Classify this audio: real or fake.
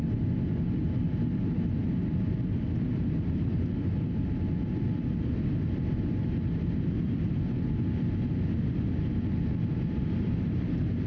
real